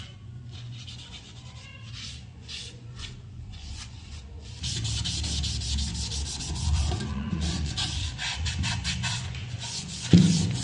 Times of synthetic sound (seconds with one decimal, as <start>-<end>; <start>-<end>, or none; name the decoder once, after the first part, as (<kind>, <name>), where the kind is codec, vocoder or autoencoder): 0.0-4.8 (vocoder, Vocos); 6.4-10.6